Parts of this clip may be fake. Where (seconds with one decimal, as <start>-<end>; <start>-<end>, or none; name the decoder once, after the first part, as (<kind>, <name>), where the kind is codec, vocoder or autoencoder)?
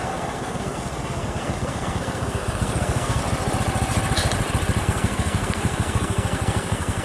0.0-3.2 (codec, SNAC); 4.8-7.0